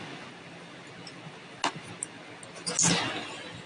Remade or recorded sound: recorded